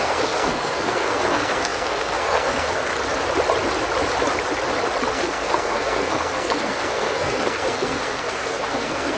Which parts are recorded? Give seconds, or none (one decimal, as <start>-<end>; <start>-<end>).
2.9-5.1